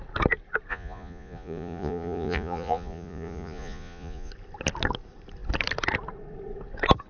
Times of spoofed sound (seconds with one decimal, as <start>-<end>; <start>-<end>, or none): 0.7-4.3